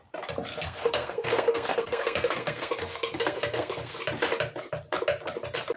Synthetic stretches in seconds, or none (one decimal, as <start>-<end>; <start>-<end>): 0.5-4.0